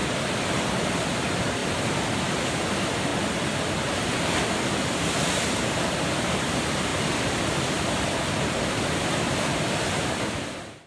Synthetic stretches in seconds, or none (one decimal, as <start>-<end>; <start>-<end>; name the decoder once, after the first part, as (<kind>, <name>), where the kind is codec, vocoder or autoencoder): 0.7-3.1 (vocoder, BigVGAN v2); 5.6-10.9